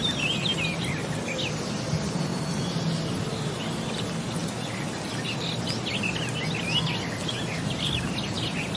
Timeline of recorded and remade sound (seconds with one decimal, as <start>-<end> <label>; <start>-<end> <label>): 0.0-8.8 recorded